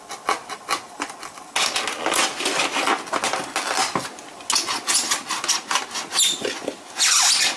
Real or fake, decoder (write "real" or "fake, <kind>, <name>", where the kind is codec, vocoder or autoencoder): real